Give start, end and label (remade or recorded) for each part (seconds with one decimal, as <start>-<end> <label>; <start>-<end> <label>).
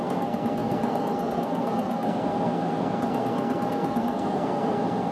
0.0-5.1 remade